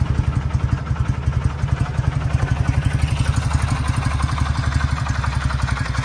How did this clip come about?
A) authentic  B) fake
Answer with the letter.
A